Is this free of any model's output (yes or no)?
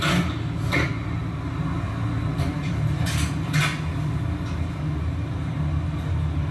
yes